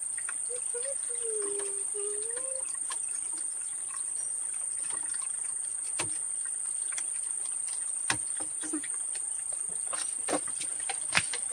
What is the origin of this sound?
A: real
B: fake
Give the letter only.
A